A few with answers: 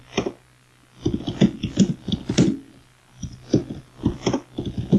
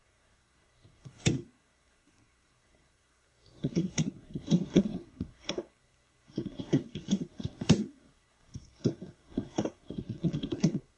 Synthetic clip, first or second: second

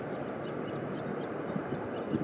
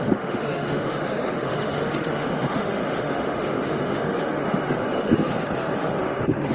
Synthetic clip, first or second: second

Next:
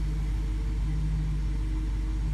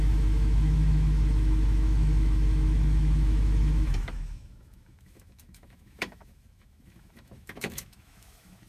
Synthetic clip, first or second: second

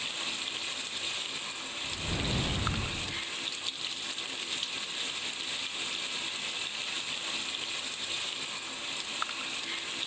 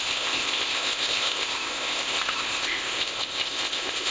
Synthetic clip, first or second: second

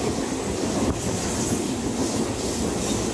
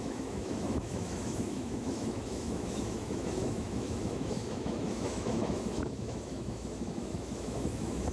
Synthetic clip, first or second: second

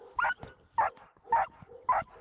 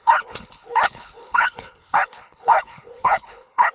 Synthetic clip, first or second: second